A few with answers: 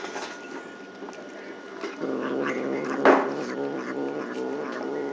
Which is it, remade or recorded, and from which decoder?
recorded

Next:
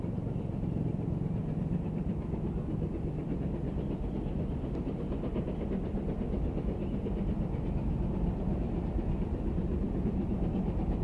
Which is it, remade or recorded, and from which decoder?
recorded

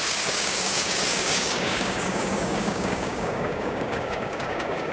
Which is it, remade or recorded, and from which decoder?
remade, codec, DAC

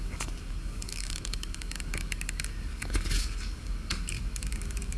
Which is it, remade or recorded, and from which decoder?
remade, codec, DAC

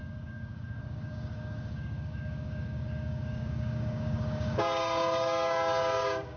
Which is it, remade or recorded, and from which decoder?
remade, codec, DAC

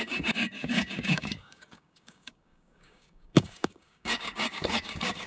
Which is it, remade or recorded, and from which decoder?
remade, codec, DAC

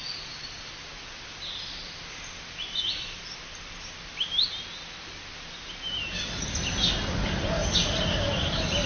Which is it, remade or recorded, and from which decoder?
recorded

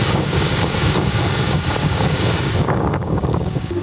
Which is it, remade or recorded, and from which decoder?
remade, codec, DAC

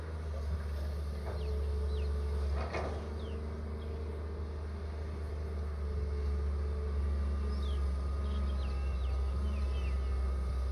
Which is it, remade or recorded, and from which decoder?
recorded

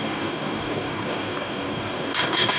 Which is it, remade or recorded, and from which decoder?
remade, codec, DAC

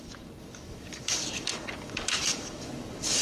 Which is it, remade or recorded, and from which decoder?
remade, codec, DAC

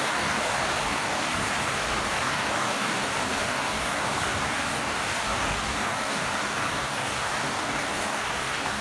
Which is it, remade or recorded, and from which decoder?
remade, codec, DAC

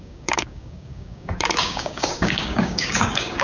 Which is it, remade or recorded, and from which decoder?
remade, codec, DAC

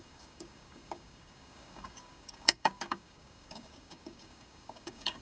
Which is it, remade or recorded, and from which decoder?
remade, codec, DAC